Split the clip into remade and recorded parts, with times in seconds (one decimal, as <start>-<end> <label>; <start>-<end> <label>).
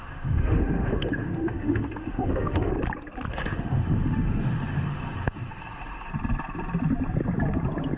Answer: 0.0-2.7 remade; 2.7-3.3 recorded; 3.3-6.1 remade; 6.1-8.0 recorded